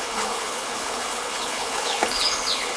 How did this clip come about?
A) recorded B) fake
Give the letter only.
B